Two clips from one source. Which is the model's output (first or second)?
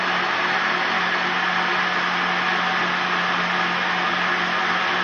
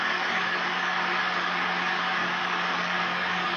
second